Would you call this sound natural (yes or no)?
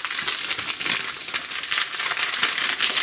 yes